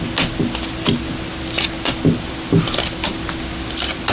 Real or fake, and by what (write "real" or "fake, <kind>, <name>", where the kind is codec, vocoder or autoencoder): real